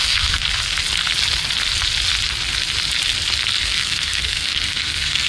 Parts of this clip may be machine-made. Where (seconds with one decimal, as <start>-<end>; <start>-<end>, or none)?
0.0-0.4; 3.6-5.3